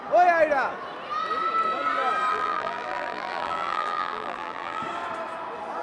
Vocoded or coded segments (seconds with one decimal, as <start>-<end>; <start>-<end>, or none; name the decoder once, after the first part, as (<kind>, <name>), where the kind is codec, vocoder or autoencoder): 2.3-4.8 (vocoder, BigVGAN v2)